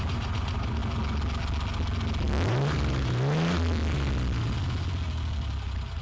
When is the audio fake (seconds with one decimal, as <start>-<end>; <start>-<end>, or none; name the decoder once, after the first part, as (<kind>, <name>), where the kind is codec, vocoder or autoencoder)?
0.0-0.8 (vocoder, BigVGAN v2); 2.3-3.8